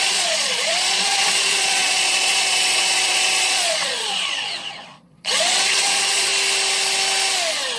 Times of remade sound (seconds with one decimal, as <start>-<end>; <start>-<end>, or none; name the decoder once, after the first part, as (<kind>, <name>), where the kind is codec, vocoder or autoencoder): 0.0-6.3 (vocoder, Vocos)